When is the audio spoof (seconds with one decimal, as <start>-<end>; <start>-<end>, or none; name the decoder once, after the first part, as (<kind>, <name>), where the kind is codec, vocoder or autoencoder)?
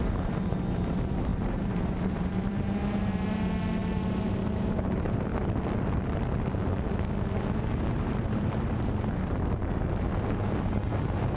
0.0-5.3 (vocoder, BigVGAN v2); 7.9-9.6; 11.0-11.4